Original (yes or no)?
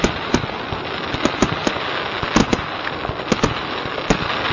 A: yes